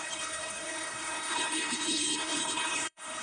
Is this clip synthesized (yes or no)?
yes